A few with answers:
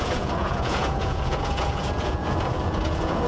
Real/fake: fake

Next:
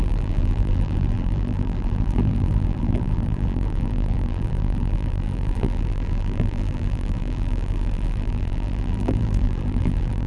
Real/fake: fake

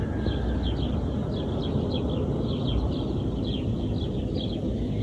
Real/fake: real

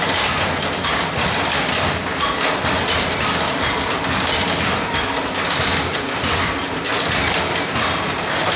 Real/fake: real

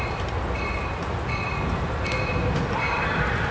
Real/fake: real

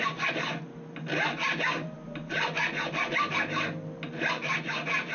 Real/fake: real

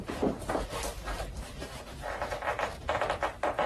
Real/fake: real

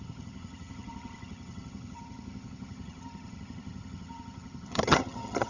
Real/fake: fake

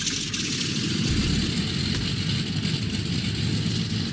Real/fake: real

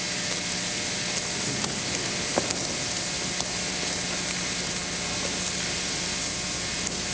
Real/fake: real